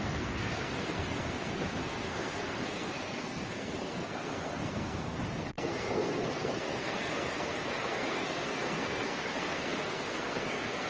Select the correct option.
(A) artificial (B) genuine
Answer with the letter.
A